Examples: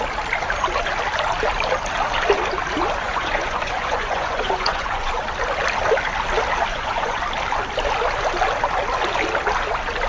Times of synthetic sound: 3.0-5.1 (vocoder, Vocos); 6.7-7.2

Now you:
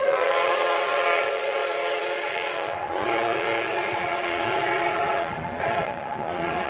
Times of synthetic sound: 0.0-6.7 (vocoder, Vocos)

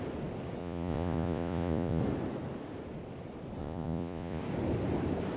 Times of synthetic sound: 0.6-2.0 (vocoder, Vocos); 3.6-4.4